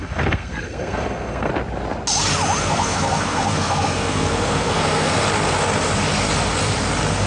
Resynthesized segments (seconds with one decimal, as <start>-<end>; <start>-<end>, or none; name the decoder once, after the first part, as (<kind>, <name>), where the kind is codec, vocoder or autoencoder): 0.0-1.5 (codec, SNAC); 2.6-5.2